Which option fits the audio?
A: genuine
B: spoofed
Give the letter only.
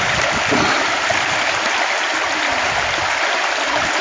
A